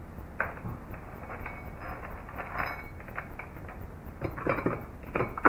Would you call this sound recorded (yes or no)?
yes